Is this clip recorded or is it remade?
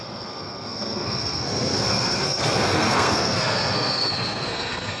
remade